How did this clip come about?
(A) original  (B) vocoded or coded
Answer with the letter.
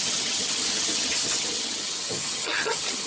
B